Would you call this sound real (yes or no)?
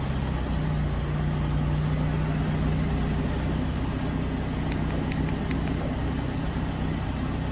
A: yes